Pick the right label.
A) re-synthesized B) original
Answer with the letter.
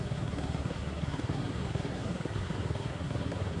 A